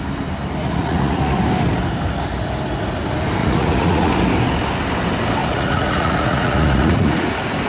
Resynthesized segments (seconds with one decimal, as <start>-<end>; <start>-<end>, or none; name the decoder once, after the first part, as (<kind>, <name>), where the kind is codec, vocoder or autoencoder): 0.6-1.4 (vocoder, Vocos); 3.4-4.1; 5.4-7.3